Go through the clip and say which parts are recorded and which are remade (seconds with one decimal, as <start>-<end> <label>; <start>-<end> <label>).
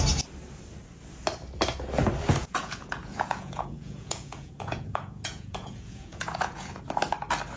0.0-2.4 recorded; 2.4-6.7 remade; 6.7-7.6 recorded